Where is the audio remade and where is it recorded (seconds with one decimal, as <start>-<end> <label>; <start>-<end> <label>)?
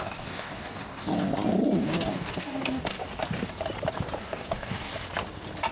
0.0-1.1 remade; 1.1-1.8 recorded; 1.8-3.0 remade; 3.0-4.2 recorded; 4.2-4.9 remade; 4.9-5.7 recorded